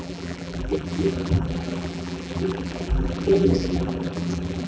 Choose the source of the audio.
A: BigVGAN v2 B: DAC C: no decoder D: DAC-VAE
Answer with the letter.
A